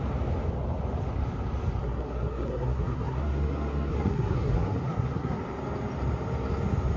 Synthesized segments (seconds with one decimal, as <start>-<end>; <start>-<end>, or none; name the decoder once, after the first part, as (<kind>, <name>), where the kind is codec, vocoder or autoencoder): 1.8-5.4 (codec, SNAC)